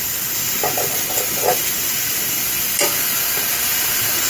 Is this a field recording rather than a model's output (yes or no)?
yes